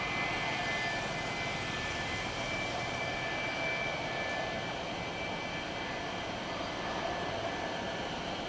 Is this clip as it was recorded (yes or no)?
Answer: yes